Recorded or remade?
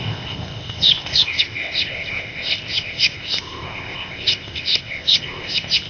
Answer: remade